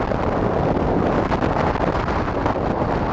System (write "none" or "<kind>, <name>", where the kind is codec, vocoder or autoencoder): none